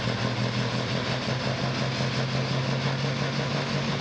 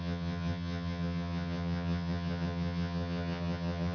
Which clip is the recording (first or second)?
first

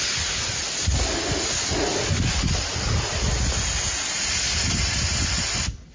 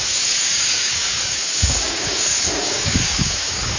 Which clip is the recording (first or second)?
first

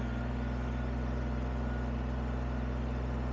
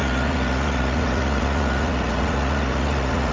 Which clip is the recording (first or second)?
first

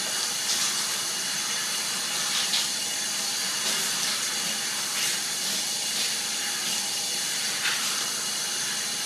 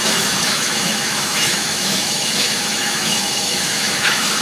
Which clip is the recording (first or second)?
first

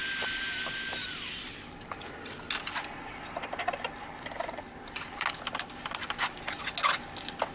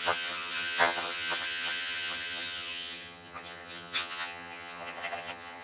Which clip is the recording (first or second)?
first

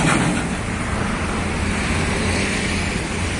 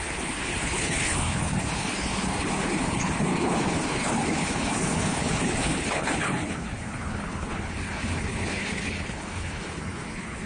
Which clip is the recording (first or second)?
first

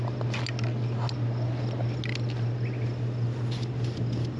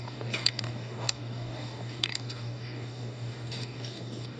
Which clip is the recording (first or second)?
first